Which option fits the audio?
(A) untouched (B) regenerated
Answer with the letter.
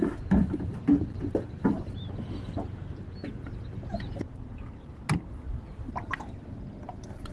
A